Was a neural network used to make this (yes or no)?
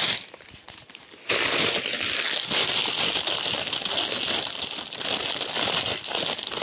no